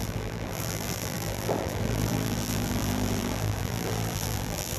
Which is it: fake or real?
fake